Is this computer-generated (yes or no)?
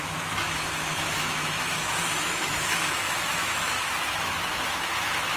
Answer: yes